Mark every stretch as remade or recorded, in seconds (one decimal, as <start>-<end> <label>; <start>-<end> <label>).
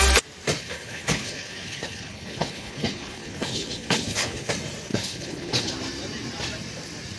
0.0-0.6 recorded; 0.6-4.5 remade; 4.5-4.9 recorded; 4.9-5.7 remade; 5.7-7.2 recorded